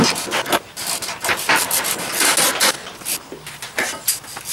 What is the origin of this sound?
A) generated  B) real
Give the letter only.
B